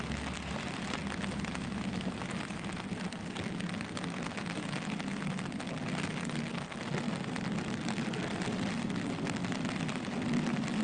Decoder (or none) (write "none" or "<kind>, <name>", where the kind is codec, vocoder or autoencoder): none